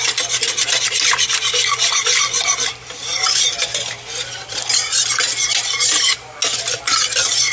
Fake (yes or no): no